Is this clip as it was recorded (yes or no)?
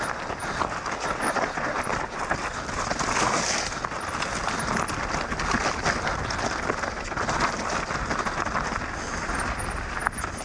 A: yes